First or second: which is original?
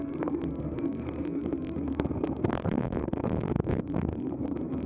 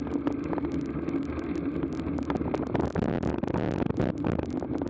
second